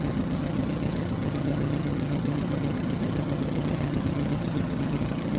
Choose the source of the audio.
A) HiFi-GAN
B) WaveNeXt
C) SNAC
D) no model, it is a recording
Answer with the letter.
A